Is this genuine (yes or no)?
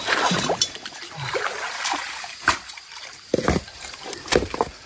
no